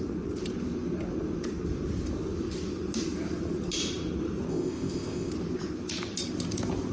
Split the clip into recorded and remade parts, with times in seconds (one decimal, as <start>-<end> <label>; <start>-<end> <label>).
0.0-4.5 recorded; 4.5-5.3 remade; 5.3-6.9 recorded